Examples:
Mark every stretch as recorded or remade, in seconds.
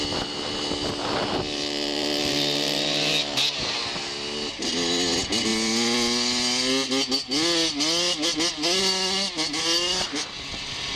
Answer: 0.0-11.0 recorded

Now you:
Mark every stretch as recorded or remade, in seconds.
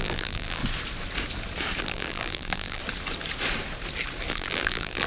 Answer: 0.0-0.6 remade; 0.6-1.8 recorded; 1.8-2.8 remade; 2.8-4.3 recorded; 4.3-5.1 remade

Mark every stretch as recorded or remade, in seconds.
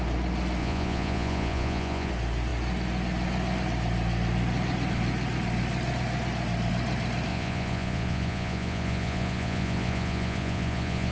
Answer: 0.0-0.6 recorded; 0.6-2.1 remade; 2.1-7.3 recorded; 7.3-11.1 remade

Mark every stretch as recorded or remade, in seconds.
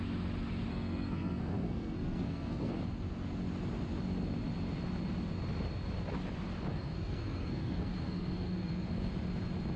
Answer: 0.0-0.7 recorded; 0.7-2.7 remade; 2.7-6.7 recorded; 6.7-9.1 remade; 9.1-9.8 recorded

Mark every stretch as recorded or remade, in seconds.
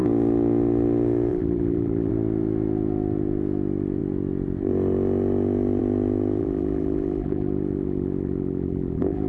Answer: 0.0-1.3 recorded; 1.3-2.1 remade; 2.1-6.4 recorded; 6.4-9.3 remade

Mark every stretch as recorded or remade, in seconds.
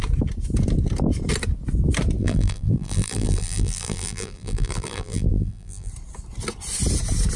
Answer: 0.0-2.2 recorded; 2.2-5.9 remade; 5.9-7.4 recorded